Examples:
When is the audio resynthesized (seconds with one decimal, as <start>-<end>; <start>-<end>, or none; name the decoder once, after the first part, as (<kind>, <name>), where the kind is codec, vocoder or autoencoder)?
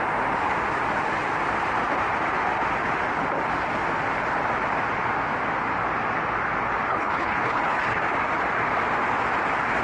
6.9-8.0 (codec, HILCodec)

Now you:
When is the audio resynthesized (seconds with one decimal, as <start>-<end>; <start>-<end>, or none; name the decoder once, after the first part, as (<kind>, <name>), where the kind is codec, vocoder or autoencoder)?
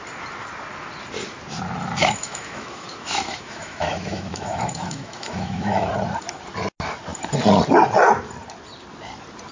2.0-5.9 (autoencoder, DAC-VAE)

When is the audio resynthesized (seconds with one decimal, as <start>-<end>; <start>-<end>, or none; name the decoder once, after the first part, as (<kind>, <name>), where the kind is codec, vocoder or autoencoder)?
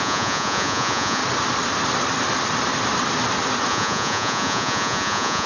0.0-1.2 (vocoder, Vocos); 3.7-5.5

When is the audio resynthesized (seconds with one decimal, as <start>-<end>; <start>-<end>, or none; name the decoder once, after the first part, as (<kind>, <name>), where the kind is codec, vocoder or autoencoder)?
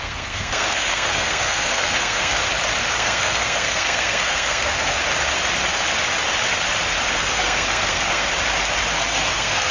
0.0-2.4 (codec, SNAC); 2.9-5.0; 7.1-8.3; 8.9-9.7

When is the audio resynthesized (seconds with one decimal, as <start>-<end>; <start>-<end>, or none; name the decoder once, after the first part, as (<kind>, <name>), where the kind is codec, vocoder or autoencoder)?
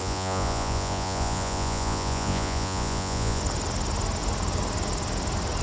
0.0-3.4 (vocoder, Vocos)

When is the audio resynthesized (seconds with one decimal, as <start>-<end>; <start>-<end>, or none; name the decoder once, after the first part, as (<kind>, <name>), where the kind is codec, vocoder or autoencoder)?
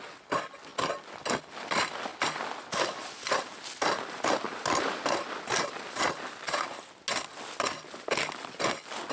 none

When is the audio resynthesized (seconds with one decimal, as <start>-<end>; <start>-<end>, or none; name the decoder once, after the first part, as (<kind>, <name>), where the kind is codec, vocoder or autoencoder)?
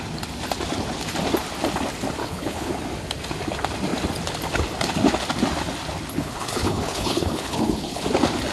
2.2-2.7 (codec, HILCodec); 6.2-8.0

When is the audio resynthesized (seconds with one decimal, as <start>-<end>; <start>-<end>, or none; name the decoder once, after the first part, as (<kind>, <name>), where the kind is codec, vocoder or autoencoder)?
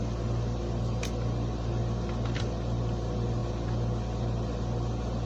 none